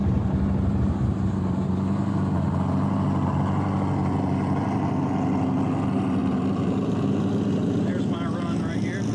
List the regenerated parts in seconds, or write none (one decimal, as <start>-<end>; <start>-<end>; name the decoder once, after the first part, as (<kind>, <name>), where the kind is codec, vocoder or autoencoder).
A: 0.0-1.6 (vocoder, BigVGAN v2); 6.2-9.1